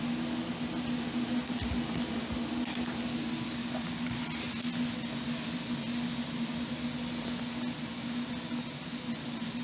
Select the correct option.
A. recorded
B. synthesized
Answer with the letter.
A